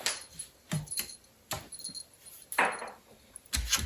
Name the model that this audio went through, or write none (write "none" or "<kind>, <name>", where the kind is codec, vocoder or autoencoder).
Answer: none